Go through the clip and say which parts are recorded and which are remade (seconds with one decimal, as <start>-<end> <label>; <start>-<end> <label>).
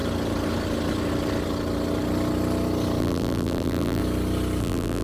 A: 0.0-3.0 recorded; 3.0-4.0 remade; 4.0-4.6 recorded; 4.6-5.0 remade